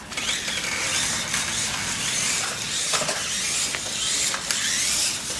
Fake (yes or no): no